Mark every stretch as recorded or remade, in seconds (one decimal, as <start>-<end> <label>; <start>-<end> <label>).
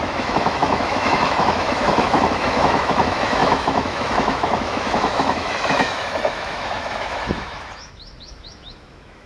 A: 0.0-9.3 remade